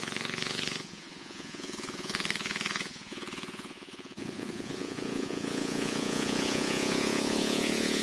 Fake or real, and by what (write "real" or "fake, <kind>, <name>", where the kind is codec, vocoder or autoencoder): fake, vocoder, Vocos